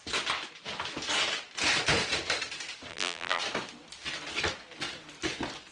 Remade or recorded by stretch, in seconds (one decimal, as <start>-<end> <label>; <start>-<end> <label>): 0.0-2.9 recorded; 2.9-3.4 remade; 3.4-5.7 recorded

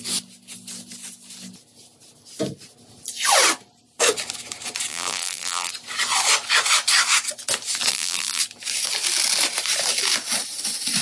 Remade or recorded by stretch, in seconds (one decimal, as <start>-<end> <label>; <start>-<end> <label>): 0.0-4.9 recorded; 4.9-5.7 remade; 5.7-7.9 recorded; 7.9-8.4 remade; 8.4-11.0 recorded

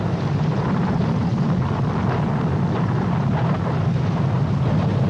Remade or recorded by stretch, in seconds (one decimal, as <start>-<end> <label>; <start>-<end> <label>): 0.0-1.3 remade; 1.3-4.4 recorded; 4.4-5.1 remade